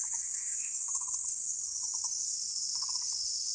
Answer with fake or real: fake